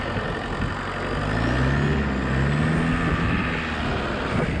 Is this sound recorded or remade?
recorded